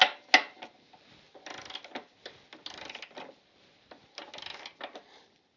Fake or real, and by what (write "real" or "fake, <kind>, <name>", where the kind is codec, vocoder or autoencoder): real